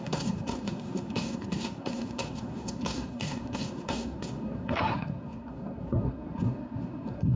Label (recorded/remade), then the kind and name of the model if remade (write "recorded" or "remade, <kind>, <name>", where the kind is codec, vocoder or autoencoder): remade, codec, SNAC